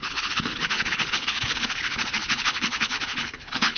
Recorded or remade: remade